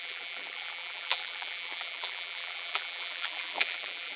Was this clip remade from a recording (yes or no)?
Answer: yes